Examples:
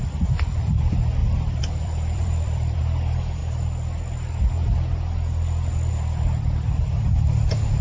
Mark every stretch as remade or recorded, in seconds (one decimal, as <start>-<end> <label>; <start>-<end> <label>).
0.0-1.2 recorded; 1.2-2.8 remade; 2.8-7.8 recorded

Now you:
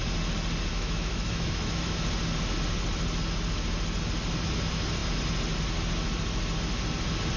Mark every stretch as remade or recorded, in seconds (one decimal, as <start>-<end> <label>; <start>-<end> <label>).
0.0-0.7 recorded; 0.7-2.0 remade; 2.0-7.4 recorded

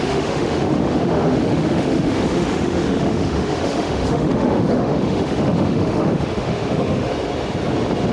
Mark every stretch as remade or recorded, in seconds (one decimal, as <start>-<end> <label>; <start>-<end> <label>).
0.0-7.1 remade; 7.1-8.1 recorded